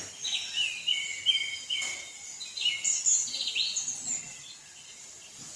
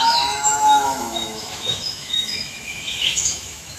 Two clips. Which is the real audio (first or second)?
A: first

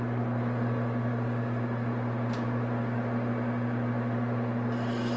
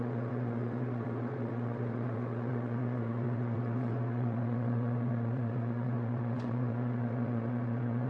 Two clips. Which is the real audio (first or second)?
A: first